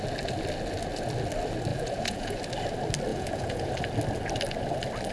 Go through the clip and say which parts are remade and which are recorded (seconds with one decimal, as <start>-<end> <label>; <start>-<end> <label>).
0.0-1.7 recorded; 1.7-2.4 remade; 2.4-3.1 recorded; 3.1-3.7 remade; 3.7-5.1 recorded